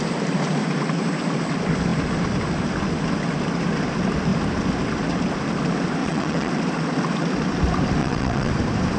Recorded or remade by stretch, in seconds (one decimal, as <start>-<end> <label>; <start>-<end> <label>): 0.0-6.0 recorded; 6.0-6.5 remade; 6.5-8.0 recorded; 8.0-8.5 remade; 8.5-9.0 recorded